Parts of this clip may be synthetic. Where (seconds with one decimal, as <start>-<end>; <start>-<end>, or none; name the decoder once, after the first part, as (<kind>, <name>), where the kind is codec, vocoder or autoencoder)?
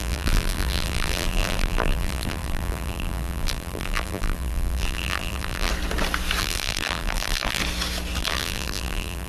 0.0-5.7 (vocoder, BigVGAN v2); 6.4-7.6; 8.2-9.3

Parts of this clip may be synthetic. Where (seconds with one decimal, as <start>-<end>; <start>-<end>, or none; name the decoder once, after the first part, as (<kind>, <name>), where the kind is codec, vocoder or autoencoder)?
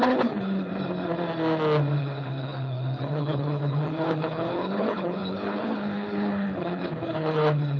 0.0-0.7 (codec, HILCodec); 2.0-7.8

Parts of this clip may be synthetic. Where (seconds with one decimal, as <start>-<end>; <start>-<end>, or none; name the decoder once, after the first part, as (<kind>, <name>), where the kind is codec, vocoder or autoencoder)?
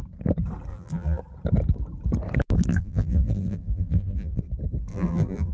0.7-1.2 (vocoder, BigVGAN v2); 2.7-4.4; 4.9-5.5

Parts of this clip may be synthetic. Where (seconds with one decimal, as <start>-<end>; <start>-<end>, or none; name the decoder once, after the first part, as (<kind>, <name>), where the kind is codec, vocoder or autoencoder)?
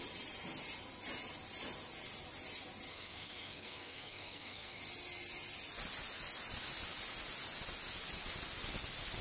2.9-4.8 (codec, SNAC)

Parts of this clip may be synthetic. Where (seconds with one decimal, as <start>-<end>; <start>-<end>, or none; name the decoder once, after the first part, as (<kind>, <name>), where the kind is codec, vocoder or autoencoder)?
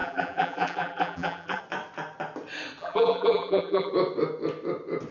0.0-1.6 (vocoder, BigVGAN v2); 2.8-3.9